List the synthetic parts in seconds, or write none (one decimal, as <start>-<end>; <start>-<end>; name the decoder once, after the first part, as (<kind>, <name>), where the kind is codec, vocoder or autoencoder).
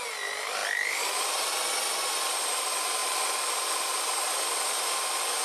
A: 3.0-4.4 (vocoder, BigVGAN v2)